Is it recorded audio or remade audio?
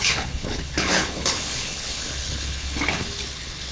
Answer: remade